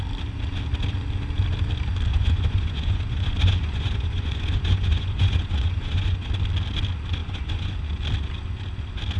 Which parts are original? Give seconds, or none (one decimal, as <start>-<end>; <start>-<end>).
0.0-2.1; 6.3-7.2; 7.8-9.2